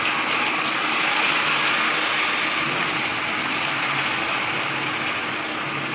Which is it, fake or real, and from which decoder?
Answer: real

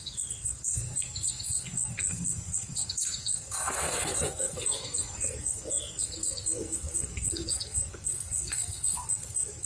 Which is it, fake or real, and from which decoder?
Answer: fake, codec, SNAC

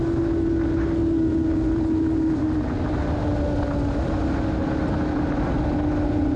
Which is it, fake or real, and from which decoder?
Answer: real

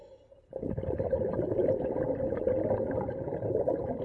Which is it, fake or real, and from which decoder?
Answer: real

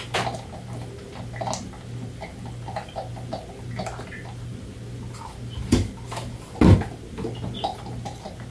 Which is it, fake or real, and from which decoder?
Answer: real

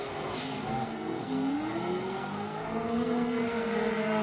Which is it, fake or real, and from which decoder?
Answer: fake, codec, SNAC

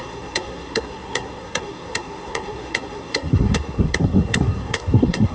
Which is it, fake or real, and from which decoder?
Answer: fake, codec, SNAC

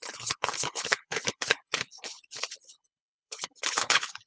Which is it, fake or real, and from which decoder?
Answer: fake, codec, HILCodec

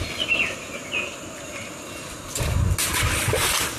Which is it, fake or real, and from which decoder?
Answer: real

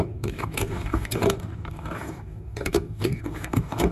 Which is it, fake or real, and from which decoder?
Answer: fake, codec, DAC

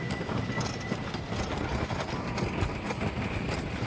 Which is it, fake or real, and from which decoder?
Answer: real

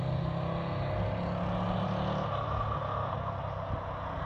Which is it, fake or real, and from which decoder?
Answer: real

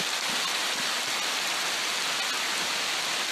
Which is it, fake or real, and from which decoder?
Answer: real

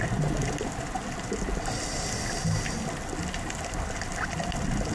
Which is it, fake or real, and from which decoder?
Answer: real